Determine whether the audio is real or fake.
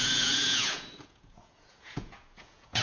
fake